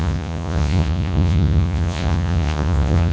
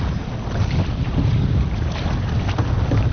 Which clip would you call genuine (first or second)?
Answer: second